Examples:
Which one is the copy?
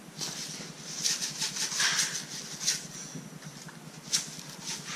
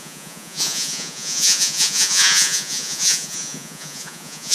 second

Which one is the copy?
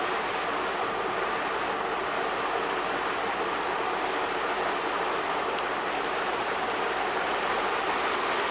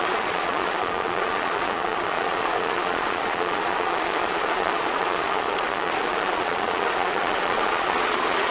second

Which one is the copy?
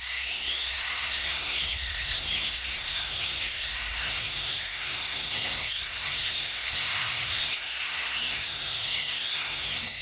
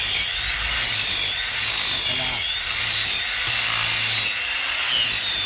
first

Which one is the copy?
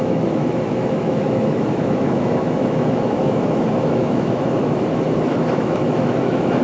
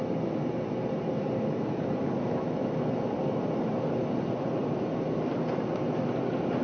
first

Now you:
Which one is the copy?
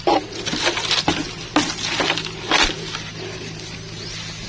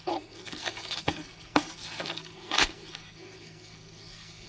second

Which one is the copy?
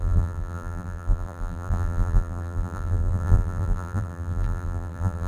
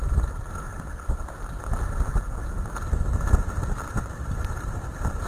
first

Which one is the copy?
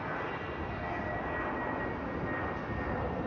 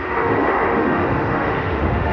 second